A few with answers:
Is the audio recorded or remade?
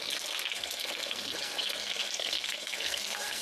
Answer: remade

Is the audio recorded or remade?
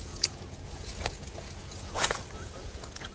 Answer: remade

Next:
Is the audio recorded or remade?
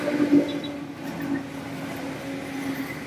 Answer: recorded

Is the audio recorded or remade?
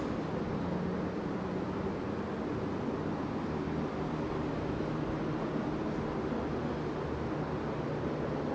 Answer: recorded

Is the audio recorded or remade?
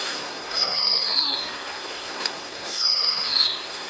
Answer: remade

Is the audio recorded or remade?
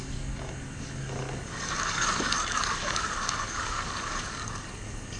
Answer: remade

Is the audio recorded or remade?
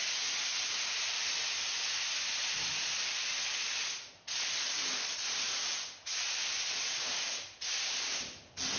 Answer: remade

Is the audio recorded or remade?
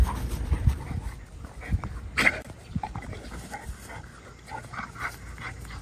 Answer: recorded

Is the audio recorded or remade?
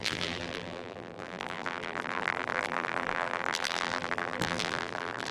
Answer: remade